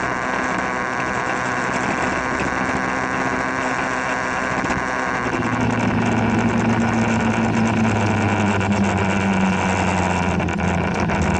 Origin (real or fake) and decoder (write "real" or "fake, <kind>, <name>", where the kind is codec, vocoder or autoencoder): real